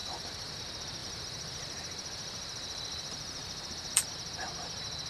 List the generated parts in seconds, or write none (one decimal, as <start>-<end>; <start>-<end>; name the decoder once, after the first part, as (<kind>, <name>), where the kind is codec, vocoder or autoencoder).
0.0-0.6 (vocoder, BigVGAN v2); 1.0-4.1